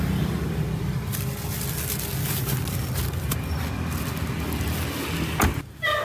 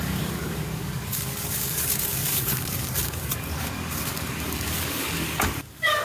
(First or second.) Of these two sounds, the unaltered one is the first